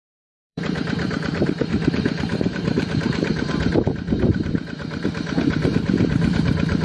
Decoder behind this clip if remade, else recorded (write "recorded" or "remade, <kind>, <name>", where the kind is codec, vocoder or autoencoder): remade, vocoder, BigVGAN v2